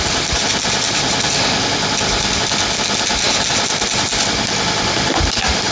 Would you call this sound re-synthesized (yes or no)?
no